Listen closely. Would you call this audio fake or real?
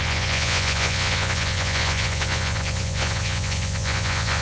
fake